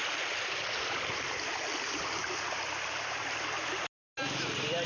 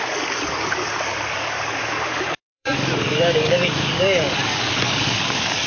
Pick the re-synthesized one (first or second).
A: second